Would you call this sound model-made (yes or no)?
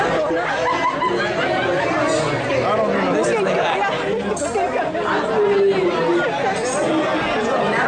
no